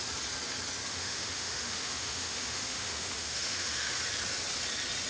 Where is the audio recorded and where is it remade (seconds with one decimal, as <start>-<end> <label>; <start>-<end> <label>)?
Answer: 0.0-0.9 recorded; 0.9-4.0 remade; 4.0-5.1 recorded